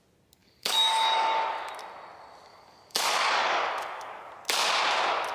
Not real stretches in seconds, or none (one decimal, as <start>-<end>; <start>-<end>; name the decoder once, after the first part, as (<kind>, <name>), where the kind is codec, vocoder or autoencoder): 0.4-1.7 (codec, DAC); 2.5-4.3